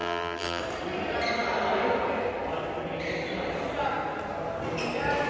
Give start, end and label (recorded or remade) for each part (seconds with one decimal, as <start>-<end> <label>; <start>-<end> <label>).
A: 0.0-0.6 remade; 0.6-5.3 recorded